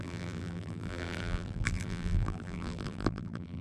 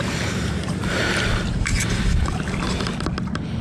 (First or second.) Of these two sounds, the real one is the second